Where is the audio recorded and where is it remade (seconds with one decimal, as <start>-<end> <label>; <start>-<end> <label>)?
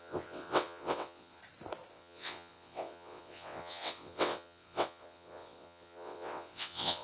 0.0-1.4 remade; 1.4-1.9 recorded; 1.9-7.0 remade